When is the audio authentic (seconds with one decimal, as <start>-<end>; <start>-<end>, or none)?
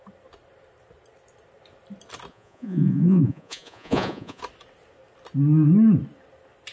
0.0-2.3; 4.4-6.7